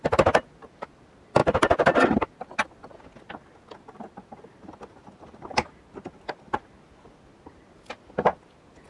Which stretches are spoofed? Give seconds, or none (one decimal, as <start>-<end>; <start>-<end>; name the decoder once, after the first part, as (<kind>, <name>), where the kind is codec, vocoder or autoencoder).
none